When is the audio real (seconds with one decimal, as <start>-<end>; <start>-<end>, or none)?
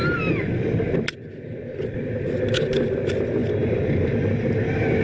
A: 0.0-5.0